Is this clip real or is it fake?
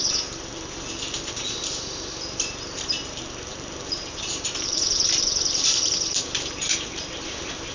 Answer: fake